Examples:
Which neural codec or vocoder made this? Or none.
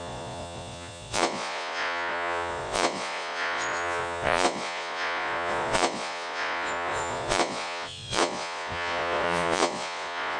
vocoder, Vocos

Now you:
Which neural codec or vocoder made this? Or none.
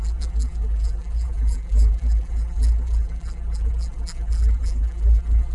vocoder, BigVGAN v2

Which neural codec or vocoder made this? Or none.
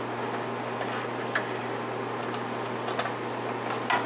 none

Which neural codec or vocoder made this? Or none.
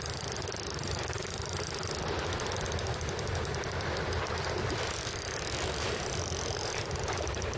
none